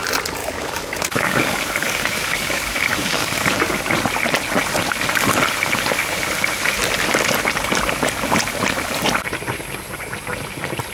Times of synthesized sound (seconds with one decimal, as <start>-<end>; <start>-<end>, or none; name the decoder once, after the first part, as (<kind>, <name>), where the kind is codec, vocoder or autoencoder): 0.4-3.8 (codec, DAC)